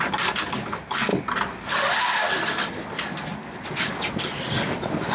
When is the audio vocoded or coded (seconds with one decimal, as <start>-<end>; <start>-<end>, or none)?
none